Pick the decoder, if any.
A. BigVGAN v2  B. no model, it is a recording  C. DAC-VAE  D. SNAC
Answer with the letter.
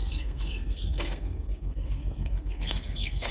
D